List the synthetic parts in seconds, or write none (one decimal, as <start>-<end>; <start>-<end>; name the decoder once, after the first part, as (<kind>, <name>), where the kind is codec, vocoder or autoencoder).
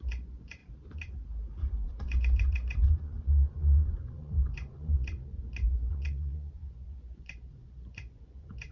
0.0-0.6 (vocoder, Vocos); 1.6-8.7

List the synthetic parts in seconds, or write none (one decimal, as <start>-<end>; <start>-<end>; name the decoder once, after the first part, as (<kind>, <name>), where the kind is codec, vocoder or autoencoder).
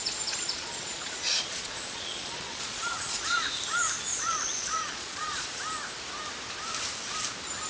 0.0-3.5 (vocoder, Vocos); 4.1-5.6